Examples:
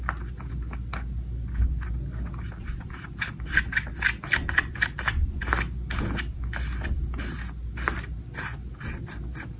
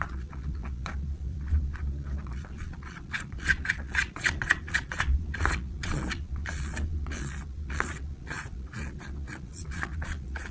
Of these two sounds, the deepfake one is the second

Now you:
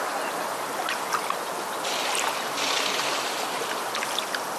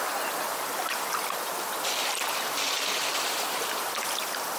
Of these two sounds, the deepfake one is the second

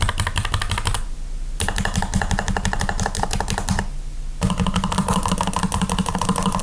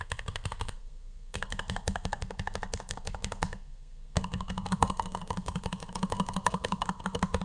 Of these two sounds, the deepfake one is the second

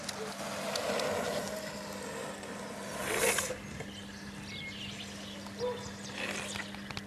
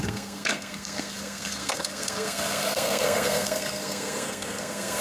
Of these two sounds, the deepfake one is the second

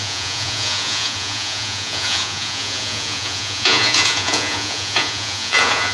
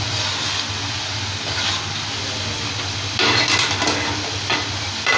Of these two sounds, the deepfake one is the first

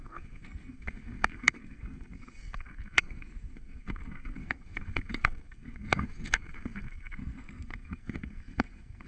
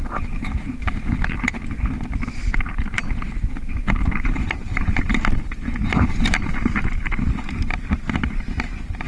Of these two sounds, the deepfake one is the first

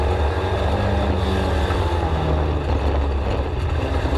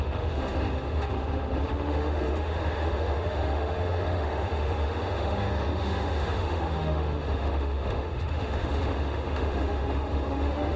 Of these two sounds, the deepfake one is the second